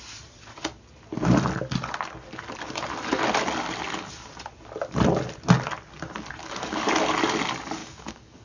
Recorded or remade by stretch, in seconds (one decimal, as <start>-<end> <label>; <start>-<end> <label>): 0.0-6.4 recorded; 6.4-6.9 remade; 6.9-7.8 recorded; 7.8-8.4 remade